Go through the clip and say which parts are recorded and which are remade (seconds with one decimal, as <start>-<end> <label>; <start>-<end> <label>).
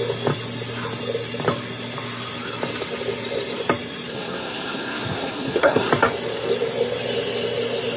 0.0-4.1 recorded; 4.1-5.9 remade; 5.9-8.0 recorded